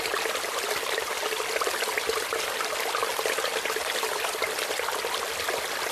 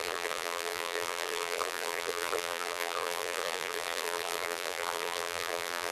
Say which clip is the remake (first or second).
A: second